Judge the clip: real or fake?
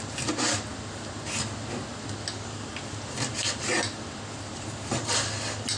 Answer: real